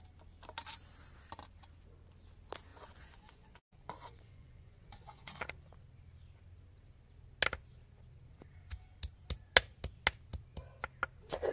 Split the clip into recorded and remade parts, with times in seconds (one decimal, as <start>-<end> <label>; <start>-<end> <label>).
0.0-2.7 recorded; 2.7-5.5 remade; 5.5-11.5 recorded